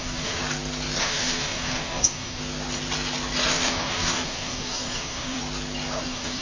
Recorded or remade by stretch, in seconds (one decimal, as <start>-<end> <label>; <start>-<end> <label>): 0.0-0.4 remade; 0.4-1.0 recorded; 1.0-2.4 remade; 2.4-3.5 recorded; 3.5-5.4 remade; 5.4-6.0 recorded; 6.0-6.4 remade